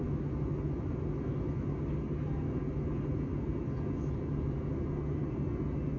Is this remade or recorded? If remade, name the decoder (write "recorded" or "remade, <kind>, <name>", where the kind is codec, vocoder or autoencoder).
recorded